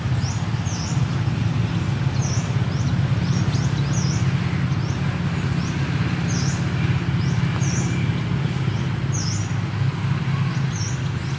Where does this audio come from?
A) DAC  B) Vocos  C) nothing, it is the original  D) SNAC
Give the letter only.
C